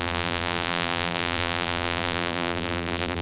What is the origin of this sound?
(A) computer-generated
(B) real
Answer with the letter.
A